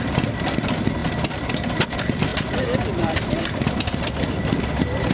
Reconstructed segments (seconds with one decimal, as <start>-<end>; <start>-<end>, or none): 2.3-3.7